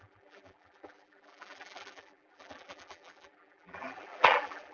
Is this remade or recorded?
remade